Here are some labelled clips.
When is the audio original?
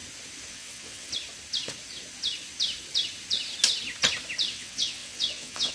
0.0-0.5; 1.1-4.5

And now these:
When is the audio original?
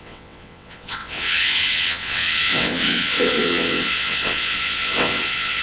none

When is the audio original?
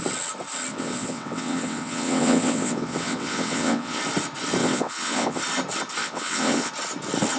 0.0-0.7; 4.0-4.6; 5.4-6.0; 6.7-7.4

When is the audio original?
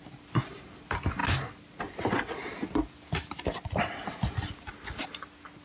0.0-5.6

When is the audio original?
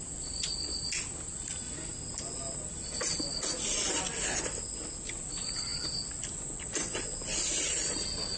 0.0-8.4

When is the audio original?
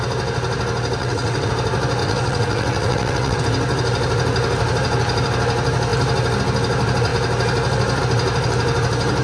0.0-1.0; 1.5-2.0; 3.4-9.2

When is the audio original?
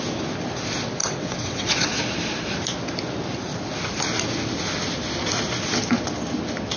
0.0-1.0; 2.0-6.8